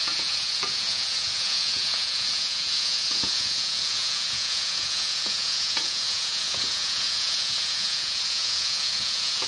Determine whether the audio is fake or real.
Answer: fake